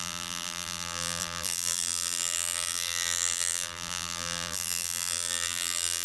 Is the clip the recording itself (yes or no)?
no